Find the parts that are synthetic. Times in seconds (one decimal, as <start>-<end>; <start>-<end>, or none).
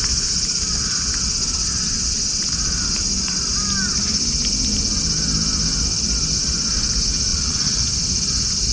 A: 7.3-7.8